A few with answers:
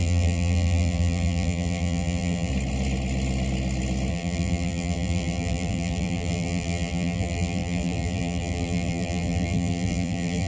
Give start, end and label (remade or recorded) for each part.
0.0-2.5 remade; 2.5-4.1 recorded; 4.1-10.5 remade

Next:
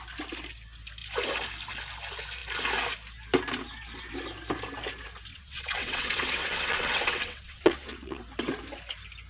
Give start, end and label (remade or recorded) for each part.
0.0-5.3 recorded; 5.3-8.2 remade; 8.2-9.3 recorded

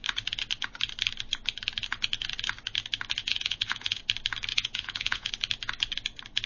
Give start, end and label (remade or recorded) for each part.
0.0-3.2 recorded; 3.2-4.0 remade; 4.0-4.5 recorded; 4.5-5.3 remade; 5.3-6.5 recorded

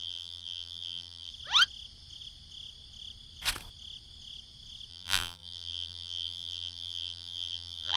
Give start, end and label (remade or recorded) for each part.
0.0-1.3 remade; 1.3-4.9 recorded; 4.9-8.0 remade

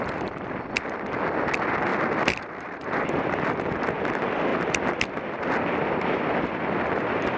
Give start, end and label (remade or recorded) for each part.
0.0-7.4 remade

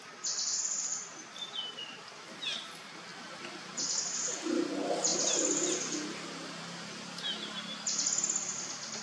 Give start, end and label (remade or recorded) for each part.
0.0-9.0 recorded

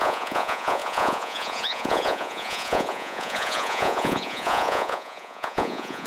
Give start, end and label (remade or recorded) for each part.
0.0-6.1 remade

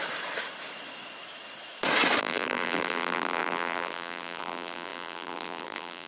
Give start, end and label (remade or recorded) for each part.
0.0-2.2 recorded; 2.2-6.1 remade